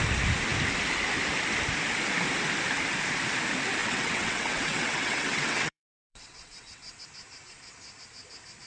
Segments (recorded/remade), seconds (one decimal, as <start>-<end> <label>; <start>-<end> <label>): 0.0-3.8 recorded; 3.8-7.0 remade; 7.0-8.7 recorded